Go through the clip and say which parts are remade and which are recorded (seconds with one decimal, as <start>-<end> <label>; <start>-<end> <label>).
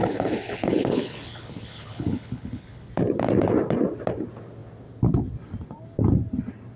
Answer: 0.0-2.9 remade; 2.9-6.8 recorded